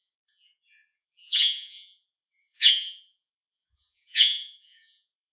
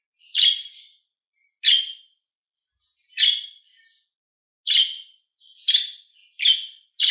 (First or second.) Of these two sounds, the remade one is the first